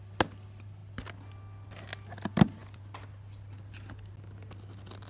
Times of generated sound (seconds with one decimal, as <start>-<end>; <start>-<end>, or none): none